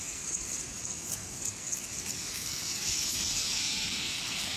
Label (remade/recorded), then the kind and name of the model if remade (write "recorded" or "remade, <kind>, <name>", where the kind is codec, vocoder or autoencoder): remade, codec, SNAC